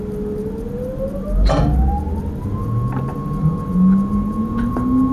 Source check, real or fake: real